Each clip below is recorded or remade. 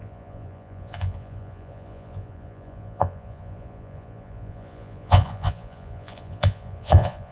remade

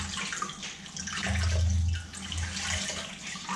recorded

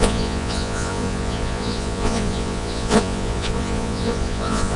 remade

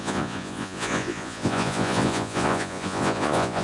remade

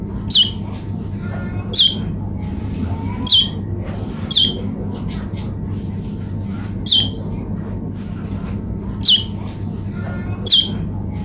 recorded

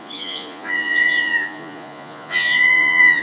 remade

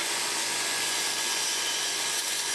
remade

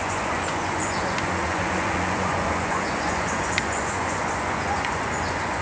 remade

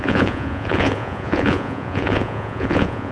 remade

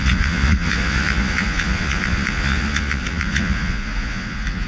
remade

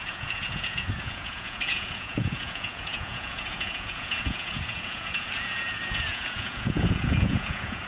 remade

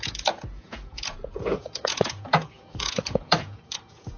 remade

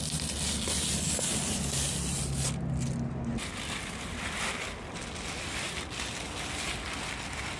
recorded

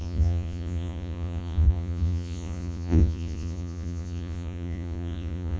remade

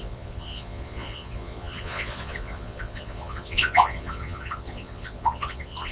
remade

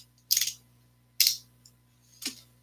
recorded